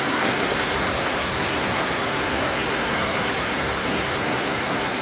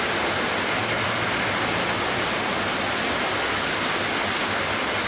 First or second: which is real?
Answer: second